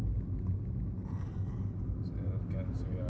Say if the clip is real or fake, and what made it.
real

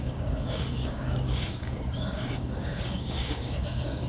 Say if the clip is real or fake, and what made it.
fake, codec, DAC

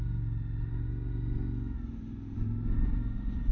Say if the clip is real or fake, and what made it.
real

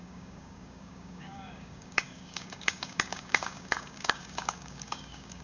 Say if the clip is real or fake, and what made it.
fake, codec, DAC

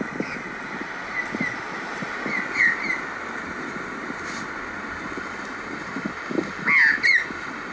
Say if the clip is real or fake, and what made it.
real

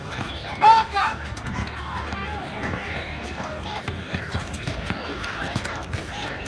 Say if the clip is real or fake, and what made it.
fake, codec, DAC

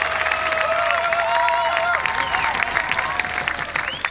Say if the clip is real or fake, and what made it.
real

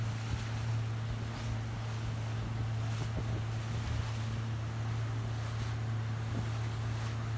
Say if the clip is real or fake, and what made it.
real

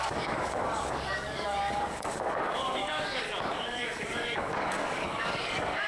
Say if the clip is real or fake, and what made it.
fake, codec, DAC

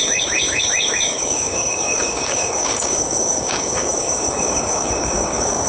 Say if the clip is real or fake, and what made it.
fake, codec, DAC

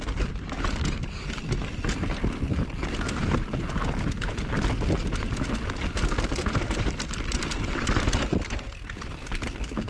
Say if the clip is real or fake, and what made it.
real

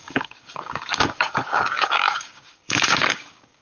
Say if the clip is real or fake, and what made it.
fake, codec, DAC